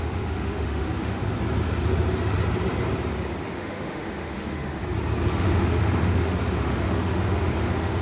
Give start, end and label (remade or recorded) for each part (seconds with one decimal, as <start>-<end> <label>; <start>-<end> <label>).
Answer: 0.0-1.2 remade; 1.2-3.4 recorded; 3.4-4.8 remade; 4.8-5.3 recorded; 5.3-8.0 remade